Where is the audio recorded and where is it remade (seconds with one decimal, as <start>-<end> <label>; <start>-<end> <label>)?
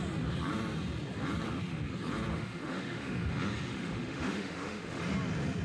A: 0.0-2.3 recorded; 2.3-3.3 remade; 3.3-3.7 recorded; 3.7-5.0 remade; 5.0-5.6 recorded